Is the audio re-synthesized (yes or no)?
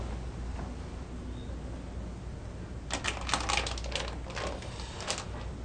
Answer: no